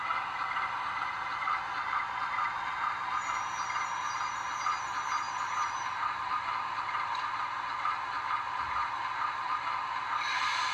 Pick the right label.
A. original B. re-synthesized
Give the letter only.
A